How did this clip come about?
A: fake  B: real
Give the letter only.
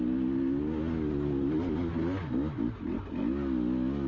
B